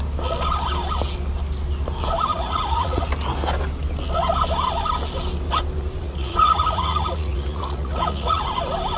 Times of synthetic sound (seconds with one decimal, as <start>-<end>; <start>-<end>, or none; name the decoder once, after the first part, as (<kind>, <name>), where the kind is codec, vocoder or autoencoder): 2.3-3.0 (vocoder, Vocos); 6.0-8.5